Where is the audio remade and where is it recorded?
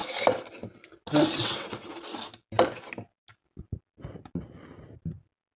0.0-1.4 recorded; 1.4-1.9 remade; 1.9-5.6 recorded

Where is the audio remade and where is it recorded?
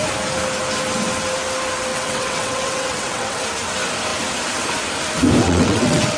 0.0-1.9 recorded; 1.9-3.4 remade; 3.4-5.4 recorded; 5.4-6.2 remade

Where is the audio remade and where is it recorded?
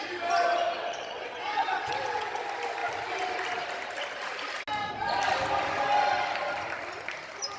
0.0-0.8 recorded; 0.8-2.4 remade; 2.4-7.6 recorded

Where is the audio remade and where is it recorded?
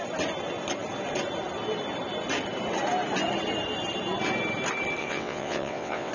0.0-5.0 recorded; 5.0-6.1 remade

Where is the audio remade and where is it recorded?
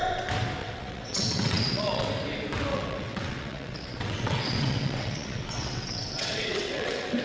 0.0-0.6 recorded; 0.6-2.1 remade; 2.1-2.7 recorded; 2.7-7.2 remade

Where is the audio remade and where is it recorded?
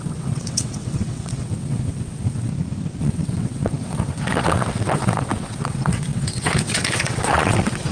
0.0-2.5 remade; 2.5-3.0 recorded; 3.0-7.9 remade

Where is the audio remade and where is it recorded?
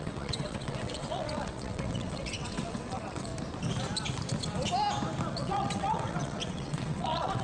0.0-3.3 remade; 3.3-5.3 recorded; 5.3-7.4 remade